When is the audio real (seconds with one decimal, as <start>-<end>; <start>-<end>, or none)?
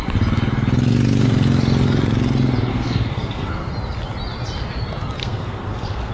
0.0-2.7; 3.7-5.2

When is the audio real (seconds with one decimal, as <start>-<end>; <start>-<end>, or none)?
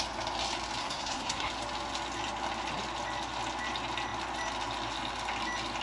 0.0-0.8; 1.5-5.8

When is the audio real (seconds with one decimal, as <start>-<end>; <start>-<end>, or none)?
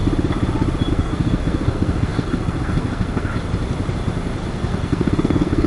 0.0-0.9; 3.3-4.5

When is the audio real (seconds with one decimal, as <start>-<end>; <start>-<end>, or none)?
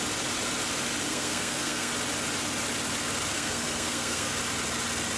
0.0-1.1; 1.9-3.3; 4.4-5.2